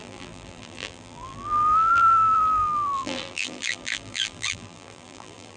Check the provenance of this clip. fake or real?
fake